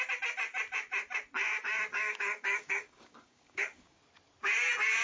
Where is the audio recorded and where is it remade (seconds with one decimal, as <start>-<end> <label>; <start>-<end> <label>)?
0.0-1.9 recorded; 1.9-4.0 remade; 4.0-5.0 recorded

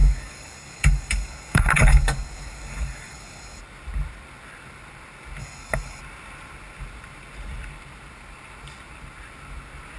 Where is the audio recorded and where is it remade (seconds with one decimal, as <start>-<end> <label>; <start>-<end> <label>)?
0.0-3.6 remade; 3.6-5.4 recorded; 5.4-6.0 remade; 6.0-10.0 recorded